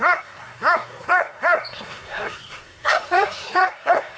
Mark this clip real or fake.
fake